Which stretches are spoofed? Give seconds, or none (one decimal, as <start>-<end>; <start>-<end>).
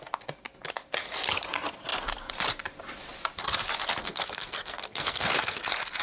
4.0-5.6